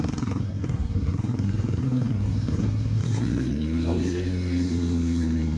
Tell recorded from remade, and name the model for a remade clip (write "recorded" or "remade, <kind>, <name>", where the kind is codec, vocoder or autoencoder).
remade, codec, SNAC